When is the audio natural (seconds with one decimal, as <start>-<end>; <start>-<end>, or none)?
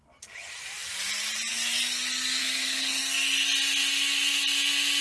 0.0-2.4; 3.0-5.0